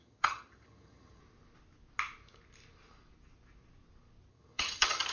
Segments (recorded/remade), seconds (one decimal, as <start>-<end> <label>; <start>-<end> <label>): 0.0-1.2 remade; 1.2-4.3 recorded; 4.3-5.1 remade